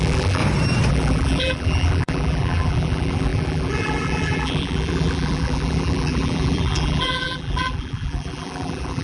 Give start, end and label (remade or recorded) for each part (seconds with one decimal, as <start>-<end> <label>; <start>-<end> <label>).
0.0-0.4 remade; 0.4-0.9 recorded; 0.9-9.0 remade